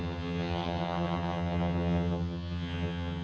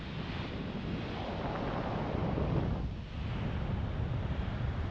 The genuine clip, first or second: second